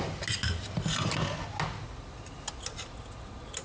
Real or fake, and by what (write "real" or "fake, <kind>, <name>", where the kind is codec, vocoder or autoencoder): real